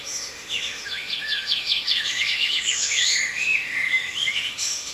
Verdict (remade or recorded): remade